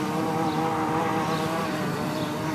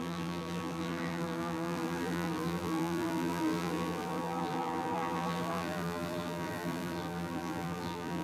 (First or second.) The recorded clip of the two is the first